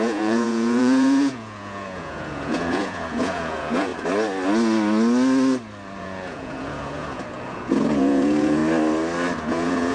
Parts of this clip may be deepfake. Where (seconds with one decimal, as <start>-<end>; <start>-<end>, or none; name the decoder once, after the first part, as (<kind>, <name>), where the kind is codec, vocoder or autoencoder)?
0.0-3.9 (vocoder, Vocos); 6.0-8.6; 9.5-9.9